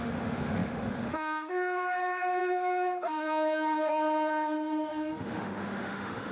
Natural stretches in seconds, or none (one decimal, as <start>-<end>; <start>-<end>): none